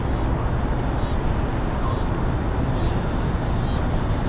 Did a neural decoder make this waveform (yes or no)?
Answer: no